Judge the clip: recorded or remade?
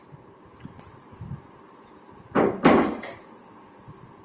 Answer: recorded